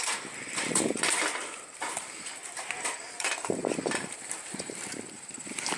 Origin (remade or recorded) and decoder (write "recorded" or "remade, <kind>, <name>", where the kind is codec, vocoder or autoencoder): remade, vocoder, BigVGAN v2